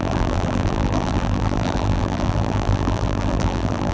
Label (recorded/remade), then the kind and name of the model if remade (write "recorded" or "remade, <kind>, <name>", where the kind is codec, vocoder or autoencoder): remade, vocoder, BigVGAN v2